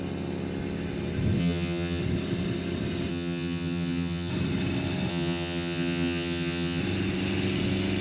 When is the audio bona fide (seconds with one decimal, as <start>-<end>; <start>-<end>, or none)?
0.0-1.4; 2.0-3.1; 4.3-5.1; 6.8-8.0

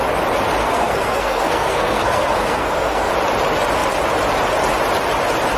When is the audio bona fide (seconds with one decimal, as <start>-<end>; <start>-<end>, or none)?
0.0-0.6; 3.1-5.6

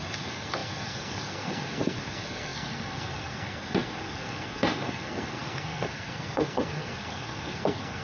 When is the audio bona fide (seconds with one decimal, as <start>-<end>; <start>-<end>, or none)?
none

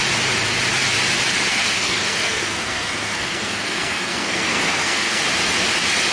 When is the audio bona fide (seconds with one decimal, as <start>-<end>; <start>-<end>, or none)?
0.0-1.5; 5.2-6.1

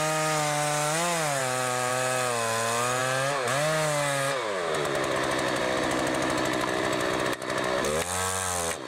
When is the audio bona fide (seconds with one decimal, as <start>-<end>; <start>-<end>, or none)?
0.0-8.9

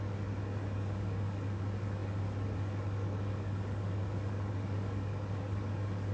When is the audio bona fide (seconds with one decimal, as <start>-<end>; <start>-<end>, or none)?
none